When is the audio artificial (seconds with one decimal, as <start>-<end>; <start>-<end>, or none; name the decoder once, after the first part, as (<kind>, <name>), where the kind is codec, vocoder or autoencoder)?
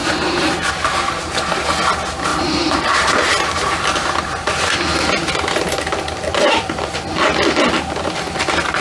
0.0-0.7 (vocoder, BigVGAN v2); 2.3-3.8